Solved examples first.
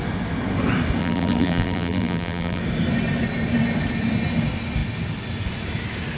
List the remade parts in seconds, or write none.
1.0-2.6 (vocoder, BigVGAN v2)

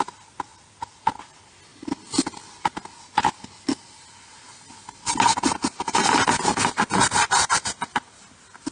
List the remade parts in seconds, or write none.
none

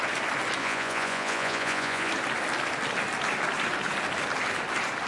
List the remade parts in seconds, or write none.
0.6-2.1 (vocoder, Vocos)

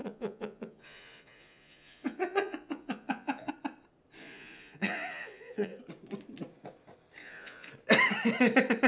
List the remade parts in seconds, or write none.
0.0-3.5 (vocoder, Vocos); 4.2-5.8; 7.2-7.7

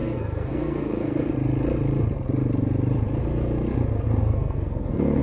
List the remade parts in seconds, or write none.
0.0-1.3 (codec, SNAC); 4.2-5.2

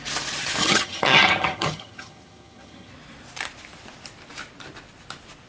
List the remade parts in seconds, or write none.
0.6-2.9 (vocoder, HiFi-GAN)